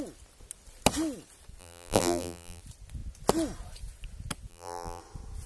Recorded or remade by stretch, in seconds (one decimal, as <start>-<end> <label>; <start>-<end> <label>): 0.0-1.6 recorded; 1.6-2.6 remade; 2.6-4.5 recorded; 4.5-5.0 remade; 5.0-5.5 recorded